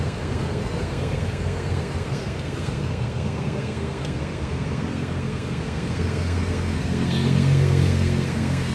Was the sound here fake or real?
fake